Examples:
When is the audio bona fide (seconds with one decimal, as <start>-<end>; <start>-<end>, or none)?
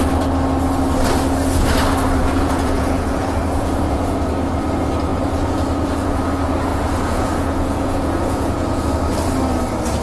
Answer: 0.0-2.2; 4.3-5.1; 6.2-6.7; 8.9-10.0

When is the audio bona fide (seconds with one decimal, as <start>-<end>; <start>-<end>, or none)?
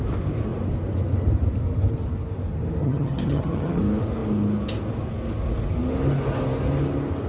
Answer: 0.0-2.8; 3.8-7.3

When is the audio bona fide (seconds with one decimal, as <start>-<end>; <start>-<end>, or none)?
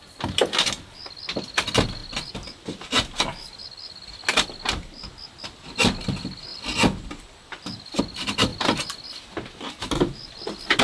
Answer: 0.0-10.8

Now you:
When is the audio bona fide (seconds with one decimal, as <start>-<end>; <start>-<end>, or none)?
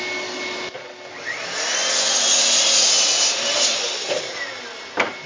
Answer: 0.0-5.3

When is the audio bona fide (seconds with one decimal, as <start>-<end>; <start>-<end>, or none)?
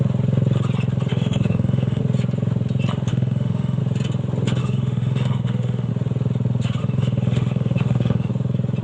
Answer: 0.0-1.1; 2.0-3.1; 3.8-4.6; 5.9-6.8; 8.3-8.8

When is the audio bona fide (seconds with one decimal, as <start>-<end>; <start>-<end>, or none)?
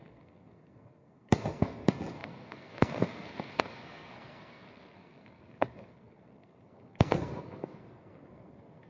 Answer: none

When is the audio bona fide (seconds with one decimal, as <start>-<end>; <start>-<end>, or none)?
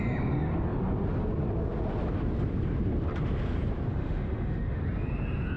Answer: 0.0-3.9; 4.8-5.6